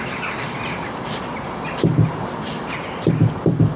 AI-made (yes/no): no